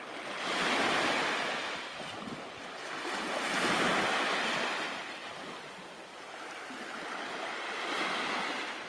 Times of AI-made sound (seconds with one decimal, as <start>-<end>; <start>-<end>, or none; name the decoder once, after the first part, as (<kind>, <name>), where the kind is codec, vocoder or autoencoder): none